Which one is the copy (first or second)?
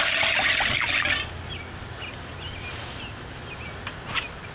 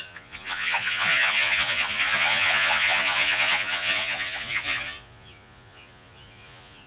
second